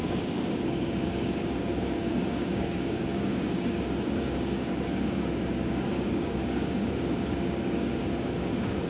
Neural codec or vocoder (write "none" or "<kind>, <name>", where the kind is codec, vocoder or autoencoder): codec, DAC